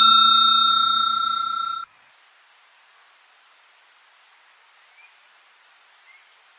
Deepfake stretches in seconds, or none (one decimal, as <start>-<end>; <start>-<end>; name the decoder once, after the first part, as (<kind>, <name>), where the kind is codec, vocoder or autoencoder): 0.7-2.1 (codec, DAC)